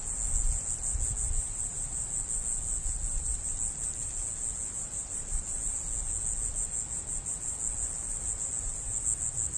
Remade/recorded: recorded